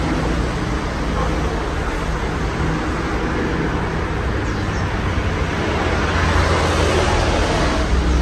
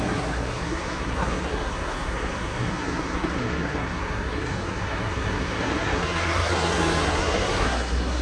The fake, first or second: second